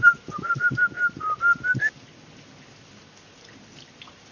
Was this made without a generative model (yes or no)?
yes